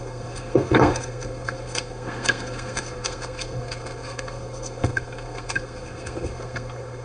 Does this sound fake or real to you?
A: fake